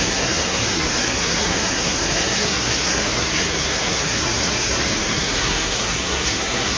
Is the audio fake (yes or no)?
yes